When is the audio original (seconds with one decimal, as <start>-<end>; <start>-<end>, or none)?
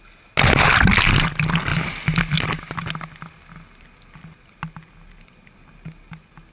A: 0.0-6.5